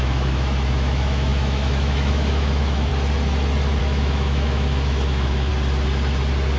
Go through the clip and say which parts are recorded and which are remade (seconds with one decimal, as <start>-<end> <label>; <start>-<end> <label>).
0.0-2.9 remade; 2.9-3.8 recorded; 3.8-5.5 remade; 5.5-6.6 recorded